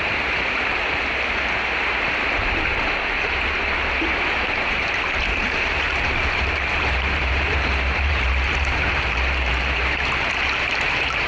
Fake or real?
fake